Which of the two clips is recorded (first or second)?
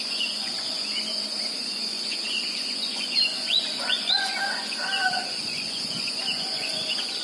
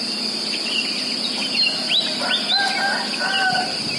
second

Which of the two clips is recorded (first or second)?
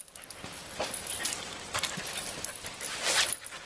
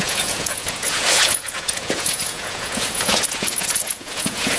first